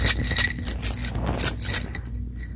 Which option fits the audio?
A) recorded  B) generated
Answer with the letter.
A